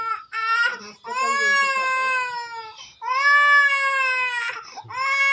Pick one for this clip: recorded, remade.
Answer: recorded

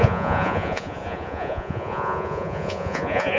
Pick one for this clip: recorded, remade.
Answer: remade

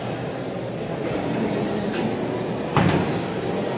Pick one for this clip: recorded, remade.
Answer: recorded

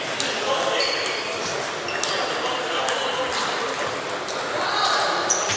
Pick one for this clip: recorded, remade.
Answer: recorded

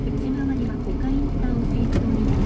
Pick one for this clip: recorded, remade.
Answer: recorded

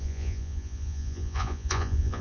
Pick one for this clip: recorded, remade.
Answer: remade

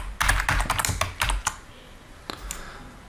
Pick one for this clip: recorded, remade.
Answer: recorded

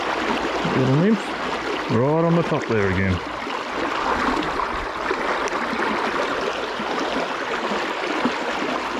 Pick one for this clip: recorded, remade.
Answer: recorded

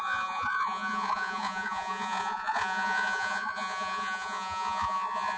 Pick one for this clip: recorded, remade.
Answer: remade